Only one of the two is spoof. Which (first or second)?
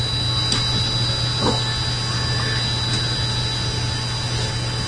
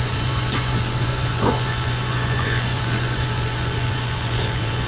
second